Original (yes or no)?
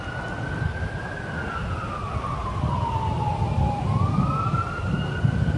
yes